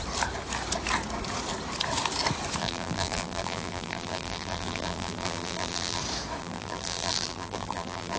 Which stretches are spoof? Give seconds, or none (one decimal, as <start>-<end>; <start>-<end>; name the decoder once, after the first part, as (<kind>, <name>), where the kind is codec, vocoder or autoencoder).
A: 2.6-6.0 (vocoder, BigVGAN v2); 6.4-8.2

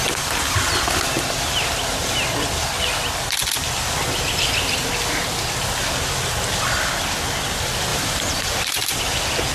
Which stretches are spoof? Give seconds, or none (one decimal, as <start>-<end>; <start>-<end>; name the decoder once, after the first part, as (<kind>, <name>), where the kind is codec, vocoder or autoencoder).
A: 4.0-4.9 (vocoder, BigVGAN v2); 7.9-9.0

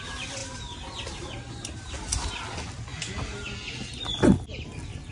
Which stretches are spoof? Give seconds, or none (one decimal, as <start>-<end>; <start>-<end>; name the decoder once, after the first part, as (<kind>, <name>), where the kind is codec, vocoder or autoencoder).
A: none

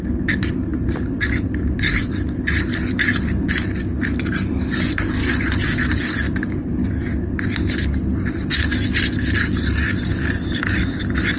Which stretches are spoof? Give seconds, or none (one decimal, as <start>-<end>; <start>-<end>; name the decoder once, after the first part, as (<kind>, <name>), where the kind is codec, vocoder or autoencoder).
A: 0.7-2.5 (vocoder, BigVGAN v2)

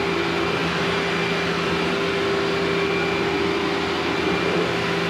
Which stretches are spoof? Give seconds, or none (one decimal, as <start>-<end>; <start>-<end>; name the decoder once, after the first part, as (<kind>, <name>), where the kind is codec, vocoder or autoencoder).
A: none

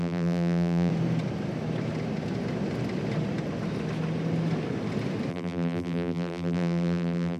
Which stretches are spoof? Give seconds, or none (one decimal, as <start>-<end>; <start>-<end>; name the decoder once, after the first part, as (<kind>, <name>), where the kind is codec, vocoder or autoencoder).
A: 0.0-0.9 (vocoder, BigVGAN v2); 5.3-7.4

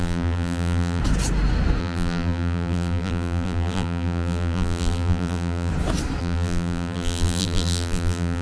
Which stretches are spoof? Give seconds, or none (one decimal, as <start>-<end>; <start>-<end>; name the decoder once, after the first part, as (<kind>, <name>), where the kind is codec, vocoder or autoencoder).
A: 0.0-1.0 (vocoder, BigVGAN v2); 1.8-5.7; 6.2-8.4

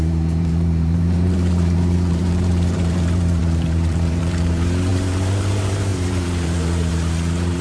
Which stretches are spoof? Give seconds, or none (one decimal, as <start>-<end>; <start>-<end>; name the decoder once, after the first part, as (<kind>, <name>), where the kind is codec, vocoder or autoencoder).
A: 0.0-7.6 (vocoder, BigVGAN v2)